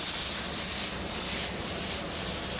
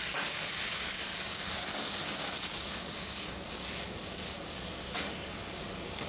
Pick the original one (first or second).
first